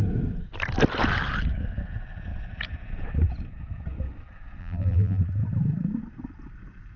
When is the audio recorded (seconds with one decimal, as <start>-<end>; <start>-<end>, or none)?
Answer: 0.0-4.6; 5.2-7.0